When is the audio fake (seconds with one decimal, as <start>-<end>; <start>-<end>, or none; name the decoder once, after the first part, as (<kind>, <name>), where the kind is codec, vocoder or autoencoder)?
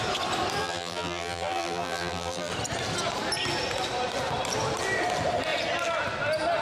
0.6-2.5 (vocoder, BigVGAN v2)